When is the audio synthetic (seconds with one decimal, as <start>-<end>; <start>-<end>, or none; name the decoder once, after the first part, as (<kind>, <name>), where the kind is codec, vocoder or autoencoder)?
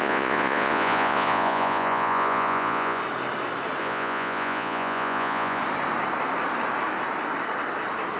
0.0-3.0 (vocoder, Vocos); 3.8-5.6